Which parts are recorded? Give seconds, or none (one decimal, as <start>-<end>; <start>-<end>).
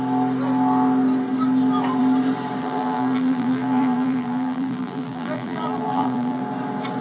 0.0-2.6; 6.4-7.0